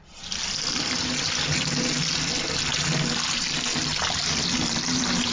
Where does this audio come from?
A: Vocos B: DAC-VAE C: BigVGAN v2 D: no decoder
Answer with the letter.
D